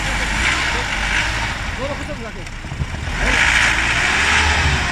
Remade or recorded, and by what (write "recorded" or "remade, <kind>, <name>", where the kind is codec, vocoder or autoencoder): recorded